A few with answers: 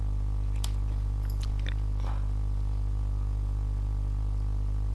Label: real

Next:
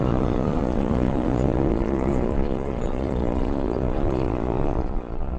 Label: fake